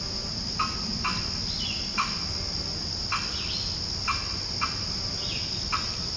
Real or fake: real